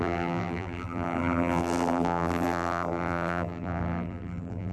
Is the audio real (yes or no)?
no